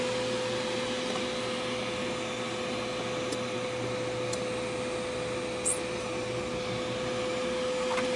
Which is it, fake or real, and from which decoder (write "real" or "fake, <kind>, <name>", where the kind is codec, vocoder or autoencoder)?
real